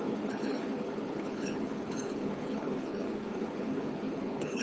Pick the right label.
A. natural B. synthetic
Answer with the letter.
B